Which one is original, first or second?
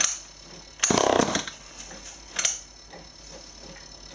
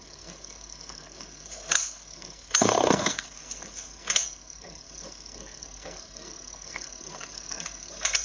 first